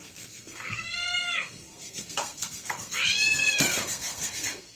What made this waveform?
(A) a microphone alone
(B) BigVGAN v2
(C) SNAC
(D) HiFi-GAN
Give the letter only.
C